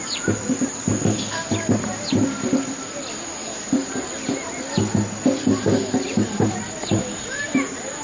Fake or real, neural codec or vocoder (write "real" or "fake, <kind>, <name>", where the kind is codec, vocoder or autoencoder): real